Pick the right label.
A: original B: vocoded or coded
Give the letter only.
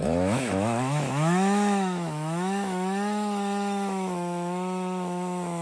B